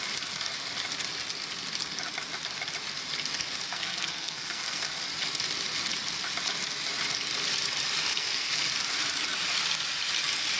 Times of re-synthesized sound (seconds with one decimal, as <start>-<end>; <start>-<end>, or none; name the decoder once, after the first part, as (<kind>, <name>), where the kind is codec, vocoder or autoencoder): 3.7-4.9 (codec, SNAC); 8.1-8.6